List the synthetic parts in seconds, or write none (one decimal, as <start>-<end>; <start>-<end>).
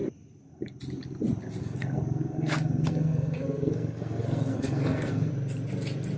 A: 1.6-5.3